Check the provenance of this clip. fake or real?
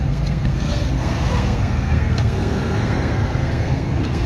fake